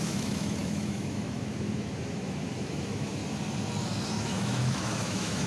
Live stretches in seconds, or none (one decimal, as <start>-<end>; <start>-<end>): 3.2-4.2